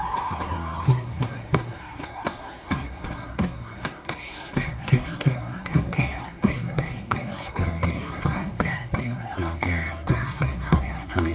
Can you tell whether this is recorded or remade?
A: remade